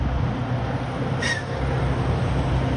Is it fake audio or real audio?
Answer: real